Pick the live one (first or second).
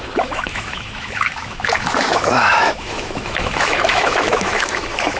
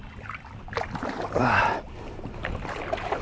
second